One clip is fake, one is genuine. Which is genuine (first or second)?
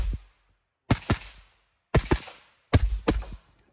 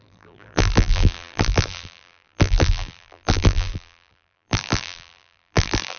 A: first